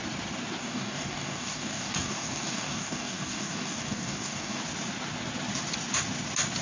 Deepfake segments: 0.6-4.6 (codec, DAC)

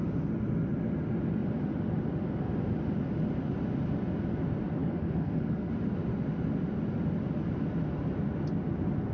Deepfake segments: 4.8-5.7 (codec, DAC)